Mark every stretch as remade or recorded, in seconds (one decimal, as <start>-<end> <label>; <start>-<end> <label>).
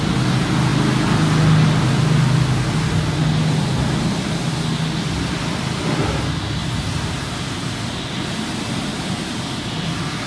0.0-6.6 recorded; 6.6-7.9 remade; 7.9-8.9 recorded; 8.9-9.7 remade; 9.7-10.3 recorded